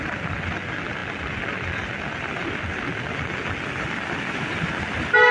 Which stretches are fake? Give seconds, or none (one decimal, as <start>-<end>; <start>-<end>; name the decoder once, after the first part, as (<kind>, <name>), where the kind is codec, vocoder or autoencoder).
none